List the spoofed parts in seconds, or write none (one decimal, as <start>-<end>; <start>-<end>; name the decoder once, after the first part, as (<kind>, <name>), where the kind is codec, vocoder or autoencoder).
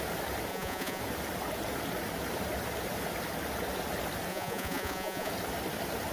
0.5-1.0 (vocoder, Vocos); 4.3-5.3